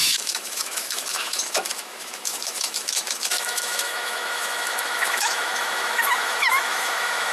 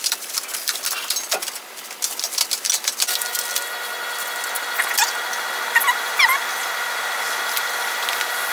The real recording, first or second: second